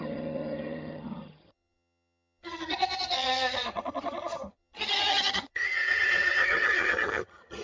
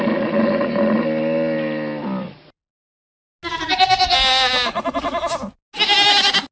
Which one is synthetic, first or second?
first